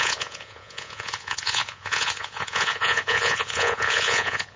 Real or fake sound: fake